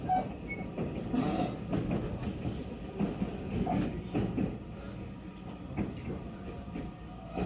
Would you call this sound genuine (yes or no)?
yes